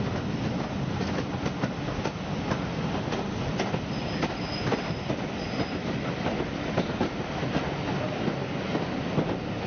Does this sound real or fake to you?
real